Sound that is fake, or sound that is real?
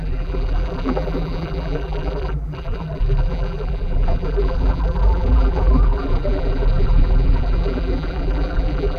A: fake